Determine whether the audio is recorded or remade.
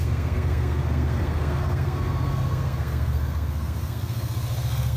remade